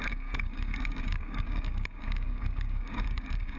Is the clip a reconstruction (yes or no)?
yes